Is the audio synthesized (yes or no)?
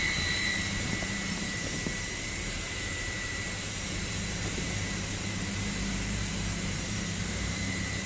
yes